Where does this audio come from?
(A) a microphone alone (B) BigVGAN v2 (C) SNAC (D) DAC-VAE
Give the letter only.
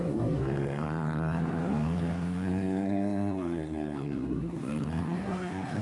C